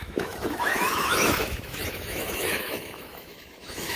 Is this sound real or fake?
fake